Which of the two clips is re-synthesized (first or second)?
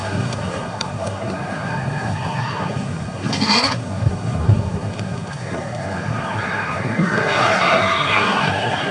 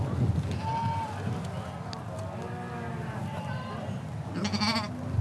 first